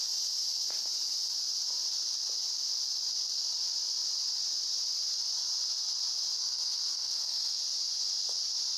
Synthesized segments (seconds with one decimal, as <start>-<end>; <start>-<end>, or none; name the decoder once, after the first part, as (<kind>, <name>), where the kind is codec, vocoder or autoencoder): 6.4-7.6 (codec, SNAC)

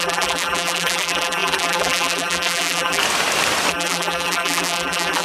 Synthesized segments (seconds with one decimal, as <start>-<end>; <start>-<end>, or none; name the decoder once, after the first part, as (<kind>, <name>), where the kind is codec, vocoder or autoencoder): 0.0-3.0 (vocoder, BigVGAN v2); 3.7-5.2